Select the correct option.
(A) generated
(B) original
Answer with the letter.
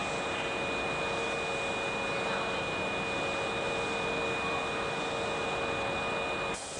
B